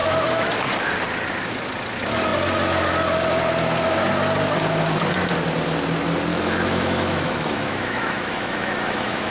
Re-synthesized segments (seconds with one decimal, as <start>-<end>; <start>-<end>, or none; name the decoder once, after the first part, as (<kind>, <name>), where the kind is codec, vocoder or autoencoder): 0.0-0.6 (autoencoder, DAC-VAE); 6.3-9.3